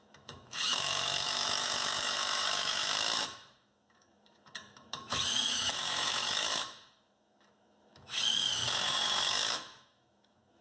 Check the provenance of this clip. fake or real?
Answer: fake